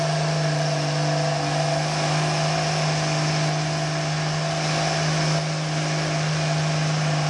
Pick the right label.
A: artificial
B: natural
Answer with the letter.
B